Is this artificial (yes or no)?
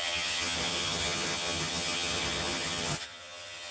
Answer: yes